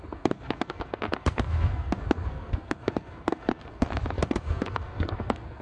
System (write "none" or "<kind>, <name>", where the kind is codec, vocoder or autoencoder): codec, SNAC